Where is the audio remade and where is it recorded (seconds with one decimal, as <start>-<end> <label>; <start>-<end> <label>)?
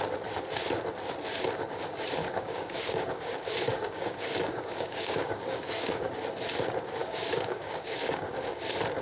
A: 0.0-2.2 recorded; 2.2-6.1 remade; 6.1-7.0 recorded; 7.0-8.6 remade; 8.6-9.0 recorded